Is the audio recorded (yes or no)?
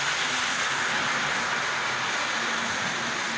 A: yes